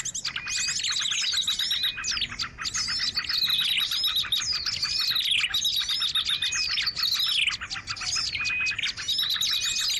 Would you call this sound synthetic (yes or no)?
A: no